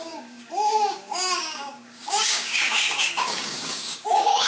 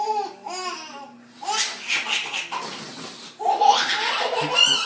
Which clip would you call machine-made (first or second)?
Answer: first